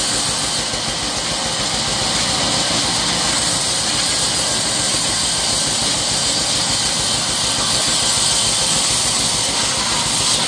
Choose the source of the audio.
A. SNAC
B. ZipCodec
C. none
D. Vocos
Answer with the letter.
C